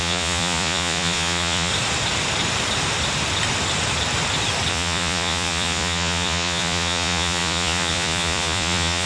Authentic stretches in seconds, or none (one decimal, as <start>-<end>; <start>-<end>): 1.7-4.7